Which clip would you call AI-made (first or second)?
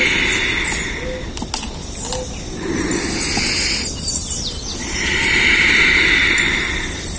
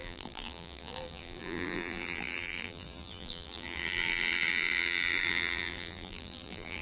second